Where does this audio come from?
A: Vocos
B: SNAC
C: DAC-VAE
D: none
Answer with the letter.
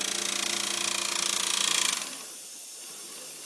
D